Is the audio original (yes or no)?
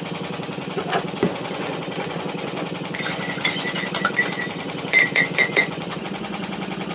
no